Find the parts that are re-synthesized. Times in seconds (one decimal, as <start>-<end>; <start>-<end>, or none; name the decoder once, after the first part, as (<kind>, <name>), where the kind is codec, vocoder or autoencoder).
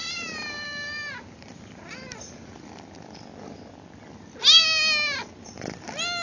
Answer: none